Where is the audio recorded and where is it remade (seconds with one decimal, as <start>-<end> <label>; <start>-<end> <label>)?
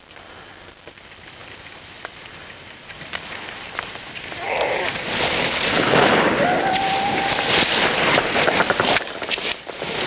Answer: 0.0-10.1 recorded